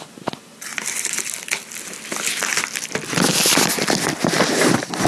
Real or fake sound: real